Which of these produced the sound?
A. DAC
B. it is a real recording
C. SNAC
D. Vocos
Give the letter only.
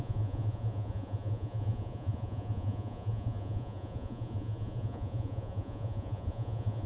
D